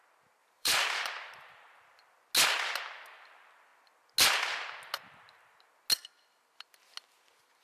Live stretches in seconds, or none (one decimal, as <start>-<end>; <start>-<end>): 0.0-0.4; 1.3-7.6